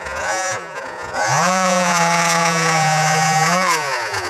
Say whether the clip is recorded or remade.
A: remade